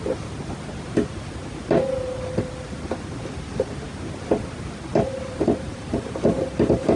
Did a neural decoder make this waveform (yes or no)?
no